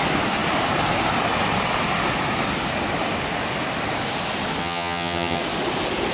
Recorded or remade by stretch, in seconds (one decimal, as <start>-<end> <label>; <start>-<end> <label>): 0.0-4.6 recorded; 4.6-5.4 remade; 5.4-6.1 recorded